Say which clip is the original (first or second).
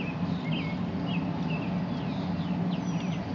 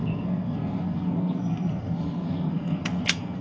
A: first